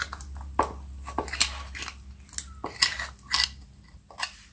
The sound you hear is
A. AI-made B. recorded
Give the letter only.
B